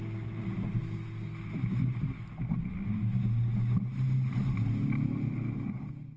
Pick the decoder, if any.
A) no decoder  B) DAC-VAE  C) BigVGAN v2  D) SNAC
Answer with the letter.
A